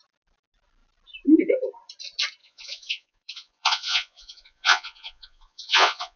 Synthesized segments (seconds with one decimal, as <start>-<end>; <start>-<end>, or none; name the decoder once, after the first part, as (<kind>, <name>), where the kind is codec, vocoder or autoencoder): 2.4-6.2 (vocoder, Vocos)